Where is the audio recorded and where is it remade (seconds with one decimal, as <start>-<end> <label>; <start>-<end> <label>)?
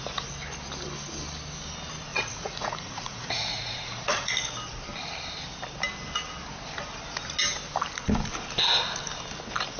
0.0-2.1 recorded; 2.1-4.3 remade; 4.3-9.8 recorded